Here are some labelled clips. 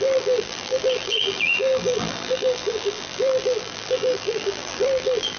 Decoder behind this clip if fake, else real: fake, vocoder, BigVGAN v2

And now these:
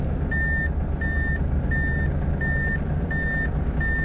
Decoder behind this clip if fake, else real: real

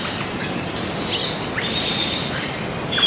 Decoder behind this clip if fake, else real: real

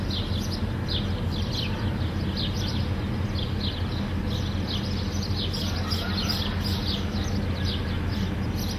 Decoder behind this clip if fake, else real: real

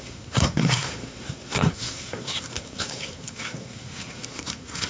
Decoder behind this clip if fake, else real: fake, codec, SNAC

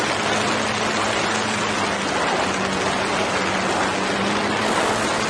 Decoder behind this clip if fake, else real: real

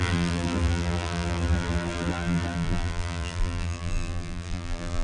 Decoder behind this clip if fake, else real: fake, vocoder, BigVGAN v2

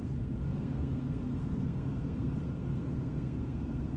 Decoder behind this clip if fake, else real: fake, codec, SNAC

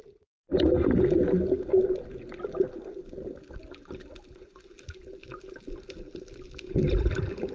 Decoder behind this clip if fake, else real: real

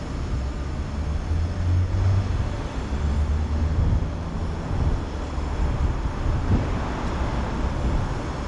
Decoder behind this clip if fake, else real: real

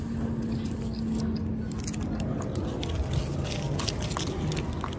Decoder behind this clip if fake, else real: real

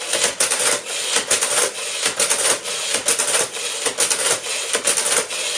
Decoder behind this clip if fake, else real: real